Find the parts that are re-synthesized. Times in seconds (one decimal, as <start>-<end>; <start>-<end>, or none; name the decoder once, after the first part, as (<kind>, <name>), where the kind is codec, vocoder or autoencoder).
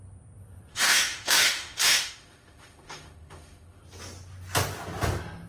0.7-3.8 (autoencoder, DAC-VAE)